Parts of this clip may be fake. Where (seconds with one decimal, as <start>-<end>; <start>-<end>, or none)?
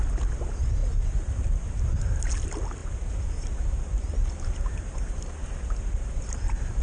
0.8-2.3; 2.8-6.8